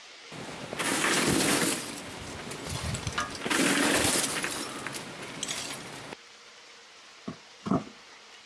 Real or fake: real